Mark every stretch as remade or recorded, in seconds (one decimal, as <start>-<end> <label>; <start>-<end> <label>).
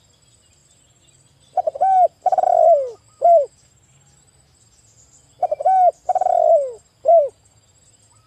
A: 0.0-8.3 recorded